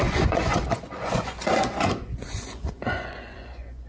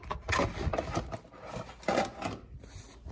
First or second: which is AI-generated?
first